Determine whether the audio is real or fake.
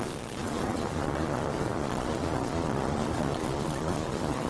fake